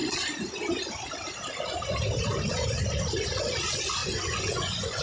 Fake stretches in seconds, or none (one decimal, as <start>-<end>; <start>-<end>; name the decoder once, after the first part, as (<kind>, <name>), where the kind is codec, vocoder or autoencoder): 4.0-5.0 (vocoder, Vocos)